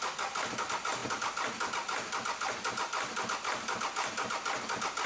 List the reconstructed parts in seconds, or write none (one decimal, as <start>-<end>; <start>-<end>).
none